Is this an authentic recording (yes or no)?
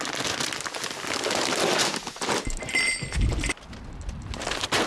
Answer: yes